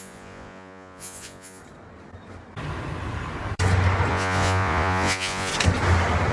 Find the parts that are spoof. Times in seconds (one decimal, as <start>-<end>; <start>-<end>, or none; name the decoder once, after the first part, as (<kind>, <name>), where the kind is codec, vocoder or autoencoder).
0.0-1.6 (vocoder, Vocos); 4.1-5.5